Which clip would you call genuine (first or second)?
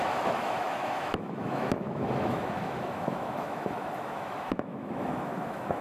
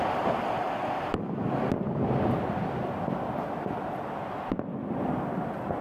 second